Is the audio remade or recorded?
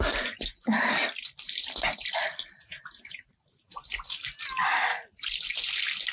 recorded